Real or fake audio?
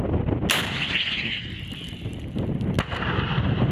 real